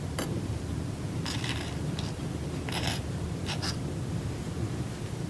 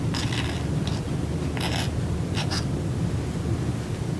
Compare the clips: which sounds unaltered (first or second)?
second